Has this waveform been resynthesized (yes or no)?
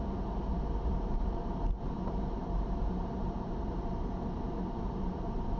yes